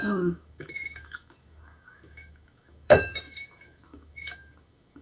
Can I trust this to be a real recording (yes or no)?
no